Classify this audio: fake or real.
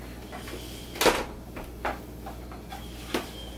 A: real